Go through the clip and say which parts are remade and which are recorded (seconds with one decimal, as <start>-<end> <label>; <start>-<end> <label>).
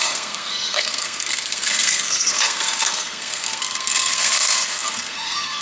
0.0-5.6 remade